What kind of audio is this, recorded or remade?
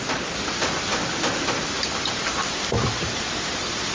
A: recorded